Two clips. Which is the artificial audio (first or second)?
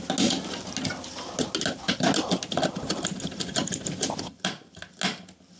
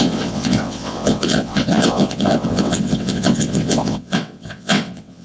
second